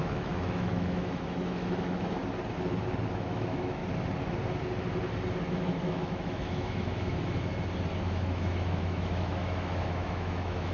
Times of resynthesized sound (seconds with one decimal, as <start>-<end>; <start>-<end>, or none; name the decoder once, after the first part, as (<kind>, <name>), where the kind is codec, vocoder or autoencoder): 0.0-2.2 (autoencoder, DAC-VAE); 3.1-3.8; 5.5-7.5; 8.0-10.7